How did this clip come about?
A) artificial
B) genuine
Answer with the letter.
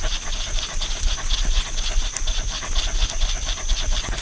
B